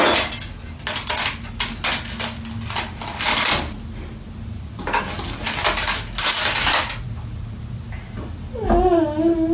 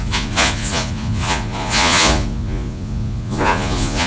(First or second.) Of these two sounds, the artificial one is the second